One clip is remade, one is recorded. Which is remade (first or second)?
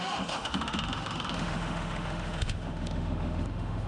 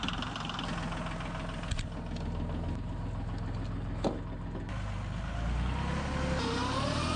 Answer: first